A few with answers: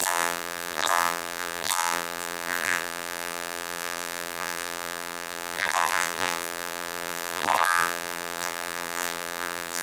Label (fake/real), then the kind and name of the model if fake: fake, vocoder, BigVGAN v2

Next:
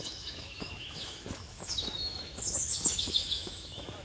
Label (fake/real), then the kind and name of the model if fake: fake, autoencoder, DAC-VAE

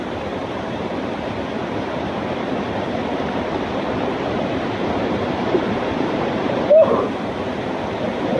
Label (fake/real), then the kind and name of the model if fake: fake, vocoder, BigVGAN v2